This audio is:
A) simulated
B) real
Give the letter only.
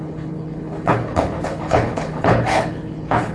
A